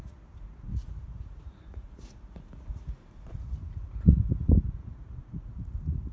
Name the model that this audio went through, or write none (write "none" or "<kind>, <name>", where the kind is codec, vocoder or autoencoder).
vocoder, Vocos